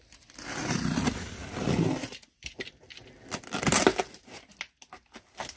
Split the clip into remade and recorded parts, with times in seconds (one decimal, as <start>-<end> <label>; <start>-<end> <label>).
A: 0.0-5.6 recorded